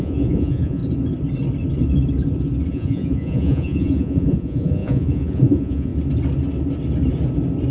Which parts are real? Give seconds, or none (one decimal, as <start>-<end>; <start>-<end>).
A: 0.8-2.7; 5.9-7.7